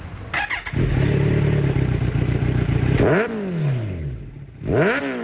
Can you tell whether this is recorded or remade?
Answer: recorded